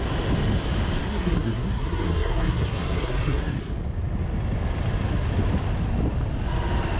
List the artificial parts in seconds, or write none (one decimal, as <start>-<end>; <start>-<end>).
1.0-3.6